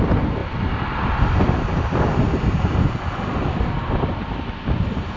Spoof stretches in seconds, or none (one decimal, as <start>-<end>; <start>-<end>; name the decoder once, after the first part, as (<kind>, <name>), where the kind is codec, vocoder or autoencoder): none